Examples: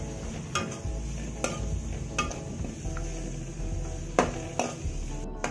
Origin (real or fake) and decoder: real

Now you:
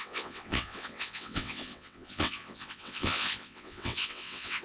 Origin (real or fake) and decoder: fake, vocoder, WaveNeXt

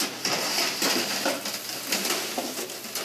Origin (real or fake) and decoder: real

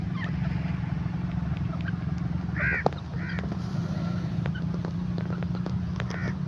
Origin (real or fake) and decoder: real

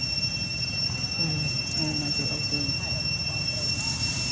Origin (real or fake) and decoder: real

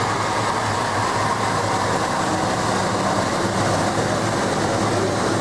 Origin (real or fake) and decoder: real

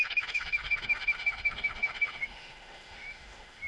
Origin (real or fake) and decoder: fake, autoencoder, DAC-VAE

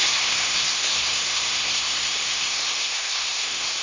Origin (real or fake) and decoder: fake, codec, SNAC